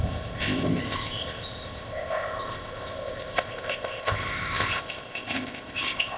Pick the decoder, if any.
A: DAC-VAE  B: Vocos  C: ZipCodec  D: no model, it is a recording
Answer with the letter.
C